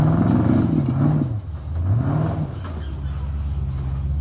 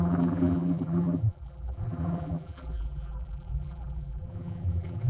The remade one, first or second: second